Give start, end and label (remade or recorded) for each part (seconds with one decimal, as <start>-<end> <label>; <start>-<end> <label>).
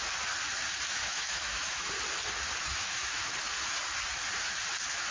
0.0-1.0 recorded; 1.0-1.9 remade; 1.9-2.7 recorded; 2.7-3.3 remade; 3.3-5.1 recorded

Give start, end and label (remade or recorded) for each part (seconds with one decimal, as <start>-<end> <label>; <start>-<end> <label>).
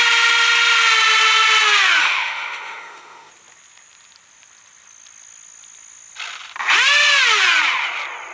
0.0-2.0 recorded; 2.0-3.3 remade; 3.3-8.3 recorded